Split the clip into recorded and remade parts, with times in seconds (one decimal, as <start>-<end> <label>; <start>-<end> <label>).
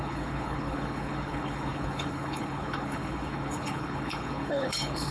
0.0-5.1 remade